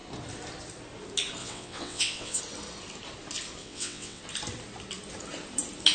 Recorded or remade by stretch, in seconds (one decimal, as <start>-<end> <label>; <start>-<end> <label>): 0.0-1.4 recorded; 1.4-2.4 remade; 2.4-3.6 recorded; 3.6-4.2 remade; 4.2-5.9 recorded